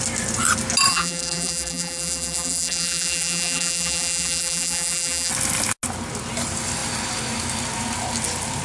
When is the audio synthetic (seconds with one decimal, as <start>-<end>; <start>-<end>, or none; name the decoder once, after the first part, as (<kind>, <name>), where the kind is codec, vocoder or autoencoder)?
0.9-5.3 (vocoder, BigVGAN v2)